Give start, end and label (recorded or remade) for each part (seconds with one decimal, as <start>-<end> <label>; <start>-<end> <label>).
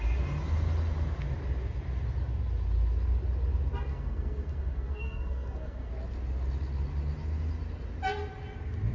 0.0-3.9 recorded; 3.9-5.9 remade; 5.9-8.9 recorded